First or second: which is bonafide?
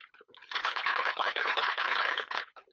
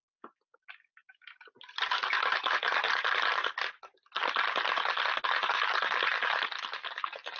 second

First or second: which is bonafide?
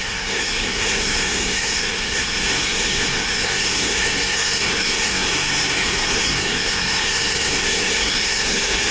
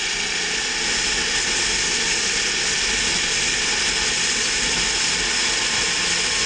second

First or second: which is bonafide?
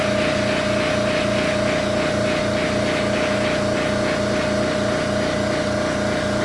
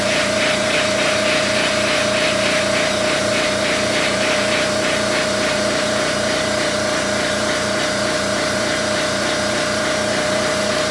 first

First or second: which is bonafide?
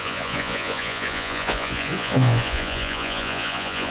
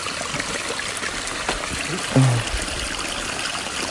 second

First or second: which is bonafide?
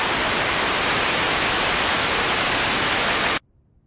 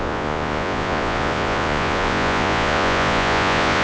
first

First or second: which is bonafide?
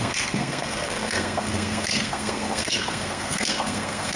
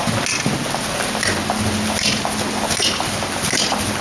second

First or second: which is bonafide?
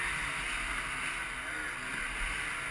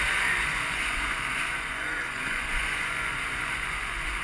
first